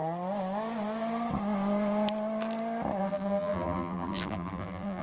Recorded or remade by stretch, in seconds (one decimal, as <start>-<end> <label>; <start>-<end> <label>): 0.0-3.0 recorded; 3.0-5.0 remade